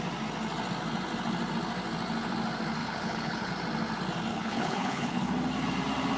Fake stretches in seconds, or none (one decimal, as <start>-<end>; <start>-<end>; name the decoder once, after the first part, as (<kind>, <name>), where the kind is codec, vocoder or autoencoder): 2.8-3.5 (codec, HILCodec); 4.3-5.3